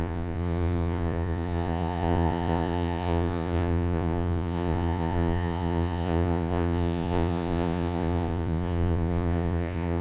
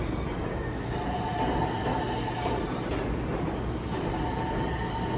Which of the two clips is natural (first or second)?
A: second